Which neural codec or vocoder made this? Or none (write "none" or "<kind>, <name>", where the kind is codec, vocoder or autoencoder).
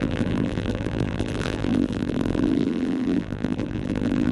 vocoder, BigVGAN v2